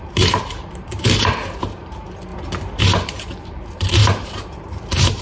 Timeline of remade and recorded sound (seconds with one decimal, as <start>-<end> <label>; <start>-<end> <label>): 0.0-2.3 remade; 2.3-2.8 recorded; 2.8-5.2 remade